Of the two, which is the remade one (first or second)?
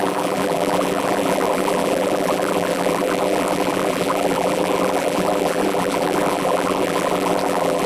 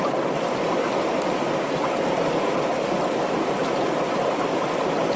first